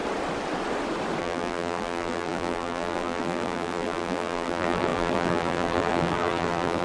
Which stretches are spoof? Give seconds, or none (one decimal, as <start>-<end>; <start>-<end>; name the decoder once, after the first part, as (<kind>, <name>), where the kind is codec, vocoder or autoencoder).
1.2-6.8 (vocoder, BigVGAN v2)